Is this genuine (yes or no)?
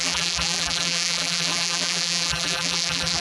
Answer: no